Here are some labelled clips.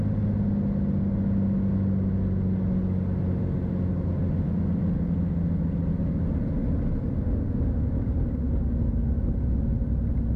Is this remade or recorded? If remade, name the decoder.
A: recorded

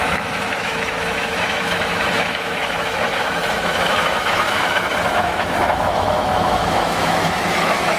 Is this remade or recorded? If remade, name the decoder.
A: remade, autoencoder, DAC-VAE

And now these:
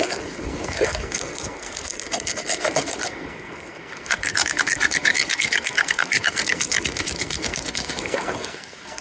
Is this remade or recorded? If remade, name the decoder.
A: remade, codec, SNAC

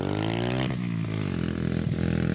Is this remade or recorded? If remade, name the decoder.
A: recorded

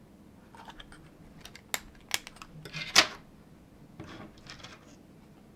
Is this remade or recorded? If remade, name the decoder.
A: recorded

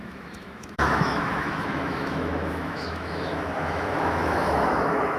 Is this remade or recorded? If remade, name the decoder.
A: remade, autoencoder, DAC-VAE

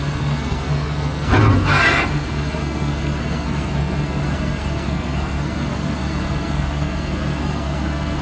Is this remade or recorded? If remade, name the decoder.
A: remade, codec, SNAC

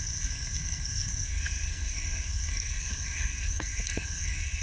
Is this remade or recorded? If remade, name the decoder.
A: remade, codec, SNAC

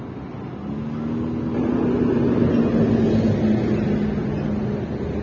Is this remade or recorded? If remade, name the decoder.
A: recorded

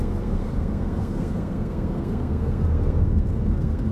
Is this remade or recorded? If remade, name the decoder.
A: remade, codec, SNAC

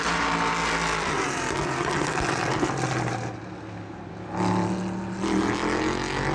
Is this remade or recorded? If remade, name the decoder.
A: recorded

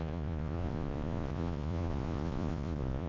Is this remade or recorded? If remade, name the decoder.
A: remade, vocoder, Vocos